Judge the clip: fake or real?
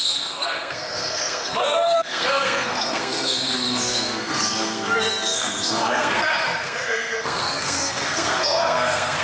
fake